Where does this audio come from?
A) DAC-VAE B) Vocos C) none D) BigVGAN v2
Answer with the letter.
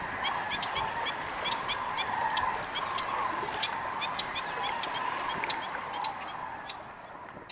C